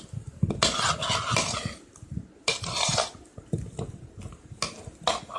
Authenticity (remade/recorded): recorded